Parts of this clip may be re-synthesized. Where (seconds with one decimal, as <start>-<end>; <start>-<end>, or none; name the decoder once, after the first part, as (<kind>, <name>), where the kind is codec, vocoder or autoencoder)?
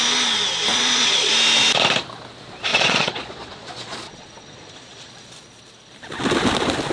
0.7-1.3 (vocoder, Vocos); 2.7-5.1